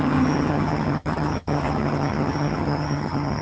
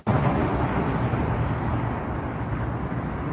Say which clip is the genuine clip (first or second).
second